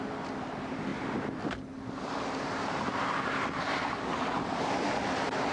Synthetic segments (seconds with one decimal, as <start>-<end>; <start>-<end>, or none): none